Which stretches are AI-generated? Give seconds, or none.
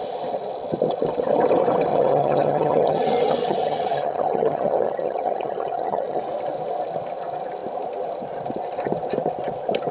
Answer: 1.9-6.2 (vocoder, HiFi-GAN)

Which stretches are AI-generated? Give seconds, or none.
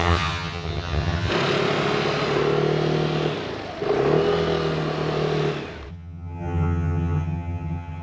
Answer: 0.0-1.3 (vocoder, HiFi-GAN); 5.9-8.0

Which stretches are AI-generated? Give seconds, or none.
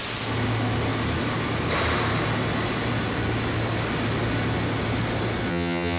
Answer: 5.5-6.0 (vocoder, HiFi-GAN)